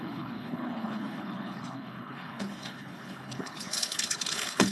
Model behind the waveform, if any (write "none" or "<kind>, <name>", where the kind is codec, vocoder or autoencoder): codec, HILCodec